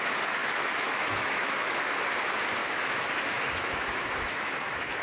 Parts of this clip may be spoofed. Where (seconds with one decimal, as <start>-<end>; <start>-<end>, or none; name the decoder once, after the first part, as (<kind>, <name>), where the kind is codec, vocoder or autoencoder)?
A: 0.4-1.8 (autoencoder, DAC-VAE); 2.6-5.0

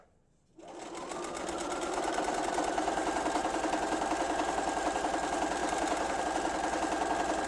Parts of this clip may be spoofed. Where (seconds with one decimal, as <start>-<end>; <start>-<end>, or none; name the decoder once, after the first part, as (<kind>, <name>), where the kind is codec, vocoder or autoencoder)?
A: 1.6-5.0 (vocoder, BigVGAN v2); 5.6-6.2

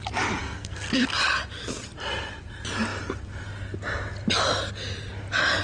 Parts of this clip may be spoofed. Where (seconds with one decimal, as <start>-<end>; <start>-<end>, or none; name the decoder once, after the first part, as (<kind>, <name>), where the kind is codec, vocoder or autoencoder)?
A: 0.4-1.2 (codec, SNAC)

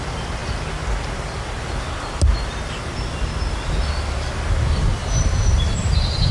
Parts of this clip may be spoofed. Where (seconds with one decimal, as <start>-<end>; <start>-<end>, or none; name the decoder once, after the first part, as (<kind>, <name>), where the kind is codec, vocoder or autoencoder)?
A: 5.0-6.3 (vocoder, BigVGAN v2)

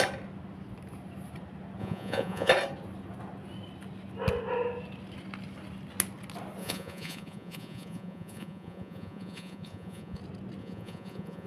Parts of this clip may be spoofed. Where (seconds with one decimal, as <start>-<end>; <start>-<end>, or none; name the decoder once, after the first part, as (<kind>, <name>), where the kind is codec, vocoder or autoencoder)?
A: 1.8-2.5 (vocoder, Vocos); 6.6-10.2; 10.6-11.5

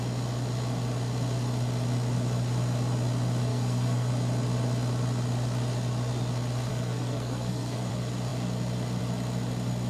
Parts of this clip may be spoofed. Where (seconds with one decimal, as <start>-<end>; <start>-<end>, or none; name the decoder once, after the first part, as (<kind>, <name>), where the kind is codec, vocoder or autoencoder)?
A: 3.5-4.1 (codec, SNAC); 6.7-7.9